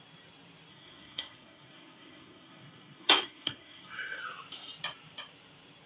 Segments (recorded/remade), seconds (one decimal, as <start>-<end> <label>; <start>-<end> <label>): 0.0-0.7 recorded; 0.7-4.2 remade; 4.2-5.9 recorded